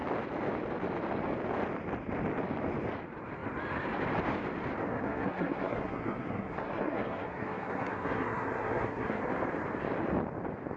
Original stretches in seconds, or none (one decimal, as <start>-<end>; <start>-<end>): 0.0-4.9; 9.2-10.8